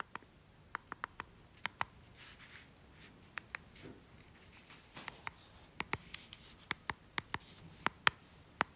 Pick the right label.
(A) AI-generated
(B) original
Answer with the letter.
B